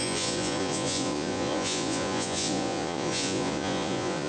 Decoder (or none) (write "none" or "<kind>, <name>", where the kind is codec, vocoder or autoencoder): vocoder, Vocos